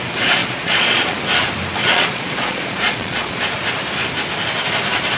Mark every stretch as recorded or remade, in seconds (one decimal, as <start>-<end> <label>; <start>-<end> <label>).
0.0-0.4 recorded; 0.4-1.2 remade; 1.2-1.8 recorded; 1.8-3.4 remade; 3.4-5.2 recorded